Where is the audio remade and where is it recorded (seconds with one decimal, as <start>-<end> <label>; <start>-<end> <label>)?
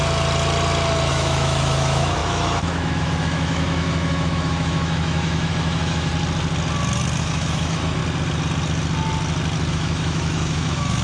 0.0-1.1 recorded; 1.1-6.1 remade; 6.1-7.2 recorded; 7.2-8.0 remade; 8.0-9.7 recorded; 9.7-11.0 remade